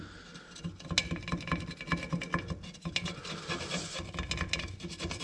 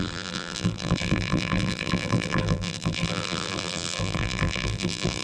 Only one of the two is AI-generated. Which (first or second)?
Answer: second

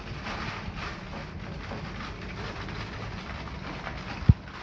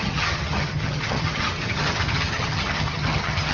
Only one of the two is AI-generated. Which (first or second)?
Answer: second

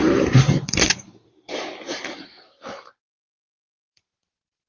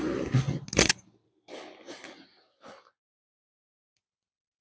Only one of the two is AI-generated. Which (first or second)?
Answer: first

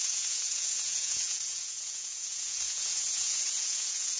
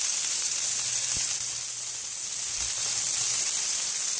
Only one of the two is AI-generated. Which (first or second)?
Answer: first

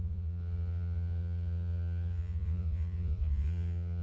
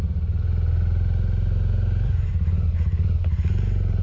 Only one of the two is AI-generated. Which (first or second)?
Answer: first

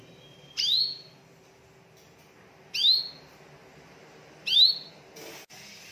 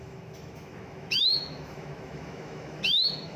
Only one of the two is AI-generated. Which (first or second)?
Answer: second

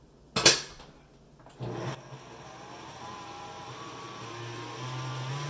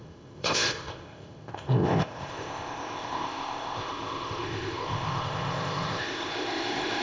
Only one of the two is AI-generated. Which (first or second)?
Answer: second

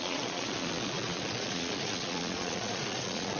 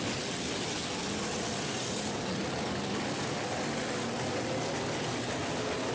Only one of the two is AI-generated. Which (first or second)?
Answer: first